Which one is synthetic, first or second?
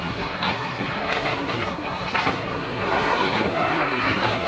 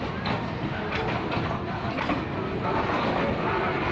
first